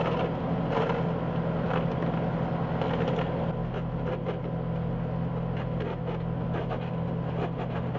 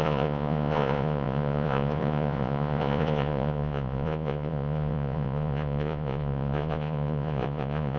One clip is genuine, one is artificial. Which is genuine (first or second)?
first